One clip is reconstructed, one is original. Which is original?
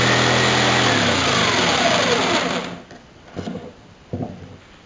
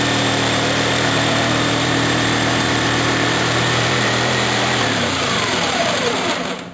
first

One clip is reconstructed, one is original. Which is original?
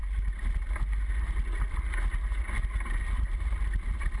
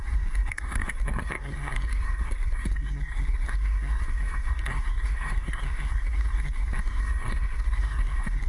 first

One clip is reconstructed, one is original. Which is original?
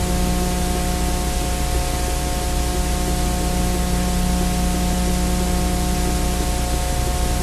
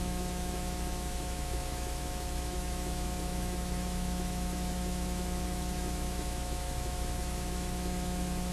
first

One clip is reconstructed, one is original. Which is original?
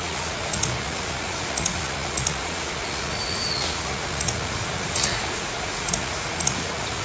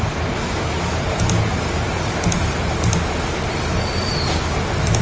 second